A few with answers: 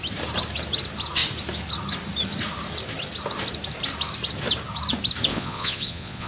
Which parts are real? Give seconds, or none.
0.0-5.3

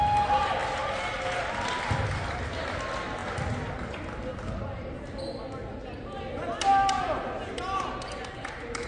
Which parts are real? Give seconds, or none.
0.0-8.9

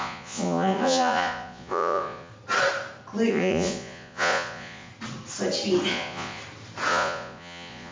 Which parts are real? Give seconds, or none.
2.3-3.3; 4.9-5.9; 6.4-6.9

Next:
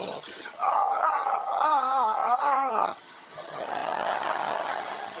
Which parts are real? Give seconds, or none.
none

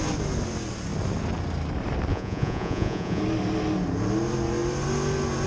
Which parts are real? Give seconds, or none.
0.0-2.1; 3.2-5.5

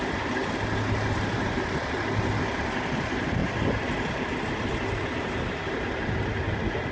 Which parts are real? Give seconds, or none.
0.0-6.9

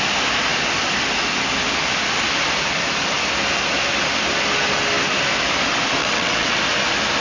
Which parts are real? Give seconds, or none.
0.0-6.0; 6.6-7.2